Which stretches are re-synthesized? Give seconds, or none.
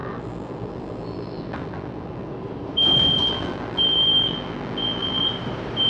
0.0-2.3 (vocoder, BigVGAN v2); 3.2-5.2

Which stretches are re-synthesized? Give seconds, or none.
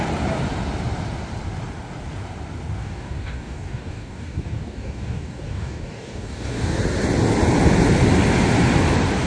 2.8-6.8 (codec, DAC)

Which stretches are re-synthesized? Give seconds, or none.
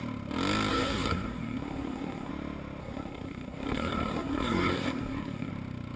0.7-2.3 (codec, SNAC); 2.8-5.5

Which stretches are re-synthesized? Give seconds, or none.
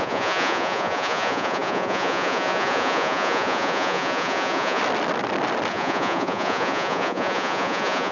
0.0-4.8 (vocoder, Vocos); 5.7-8.1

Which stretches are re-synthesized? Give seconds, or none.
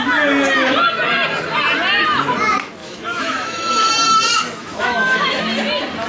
2.8-3.9 (autoencoder, DAC-VAE); 4.6-5.4